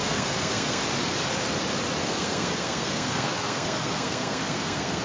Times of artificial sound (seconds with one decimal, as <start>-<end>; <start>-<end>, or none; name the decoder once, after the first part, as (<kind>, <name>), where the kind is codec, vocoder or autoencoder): 0.0-0.8 (codec, SNAC); 2.0-5.0